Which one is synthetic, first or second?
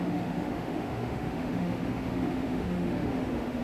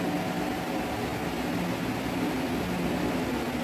first